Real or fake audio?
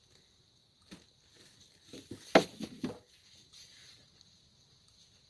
real